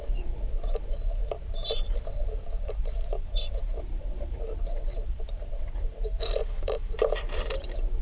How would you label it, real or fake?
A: fake